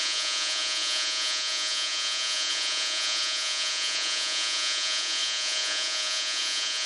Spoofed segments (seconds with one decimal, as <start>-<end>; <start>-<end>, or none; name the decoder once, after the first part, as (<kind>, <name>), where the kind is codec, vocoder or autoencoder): 0.0-6.9 (vocoder, Vocos)

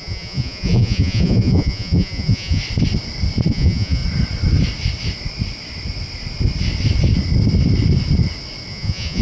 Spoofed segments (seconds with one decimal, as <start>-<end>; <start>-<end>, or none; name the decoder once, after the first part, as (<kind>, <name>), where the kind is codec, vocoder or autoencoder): 0.0-2.6 (vocoder, Vocos); 3.5-4.0; 8.7-9.2